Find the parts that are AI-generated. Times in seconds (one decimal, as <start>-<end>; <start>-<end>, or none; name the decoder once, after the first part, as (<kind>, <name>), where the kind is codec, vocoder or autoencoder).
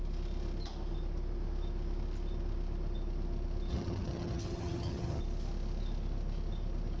3.7-5.2 (vocoder, HiFi-GAN)